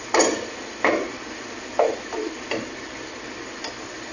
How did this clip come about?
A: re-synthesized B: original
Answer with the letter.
B